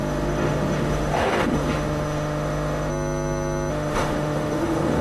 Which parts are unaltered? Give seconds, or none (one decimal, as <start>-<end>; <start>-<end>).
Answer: 2.9-3.7